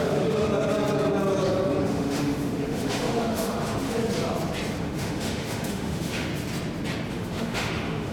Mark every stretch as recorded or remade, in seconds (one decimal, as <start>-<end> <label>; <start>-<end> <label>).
0.0-0.5 remade; 0.5-1.8 recorded; 1.8-4.0 remade; 4.0-4.8 recorded; 4.8-6.3 remade; 6.3-7.1 recorded; 7.1-8.1 remade